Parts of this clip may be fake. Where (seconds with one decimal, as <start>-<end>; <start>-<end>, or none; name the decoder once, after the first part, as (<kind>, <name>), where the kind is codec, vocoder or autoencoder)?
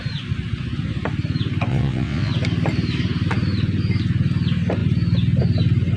1.7-2.3 (vocoder, WaveNeXt)